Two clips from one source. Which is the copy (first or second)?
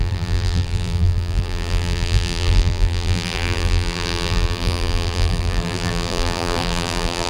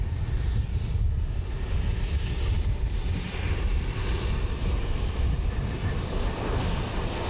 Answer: first